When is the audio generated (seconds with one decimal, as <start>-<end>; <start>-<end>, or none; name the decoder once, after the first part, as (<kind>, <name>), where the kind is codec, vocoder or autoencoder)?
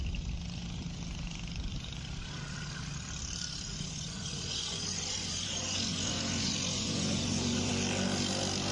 3.7-7.7 (vocoder, Vocos)